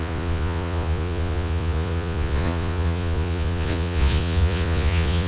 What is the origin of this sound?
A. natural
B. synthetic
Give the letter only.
B